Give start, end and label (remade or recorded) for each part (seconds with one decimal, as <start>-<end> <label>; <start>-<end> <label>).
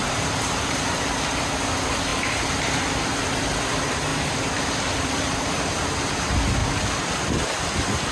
0.0-0.8 remade; 0.8-4.1 recorded; 4.1-5.6 remade; 5.6-8.1 recorded